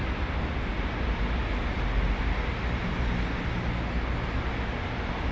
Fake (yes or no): no